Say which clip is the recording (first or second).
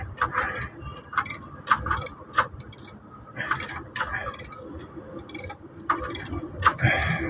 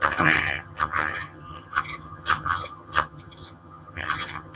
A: first